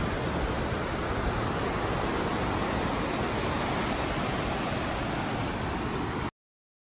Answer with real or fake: real